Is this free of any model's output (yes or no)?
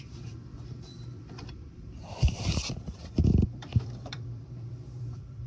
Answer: no